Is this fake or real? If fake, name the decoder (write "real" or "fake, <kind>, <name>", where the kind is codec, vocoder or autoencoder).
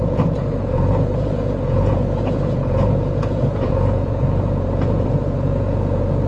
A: fake, vocoder, Vocos